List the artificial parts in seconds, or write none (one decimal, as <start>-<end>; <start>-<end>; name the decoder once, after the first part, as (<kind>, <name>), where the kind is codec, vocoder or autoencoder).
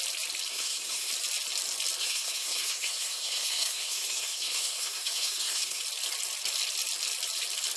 0.5-1.1 (codec, SNAC); 2.0-5.8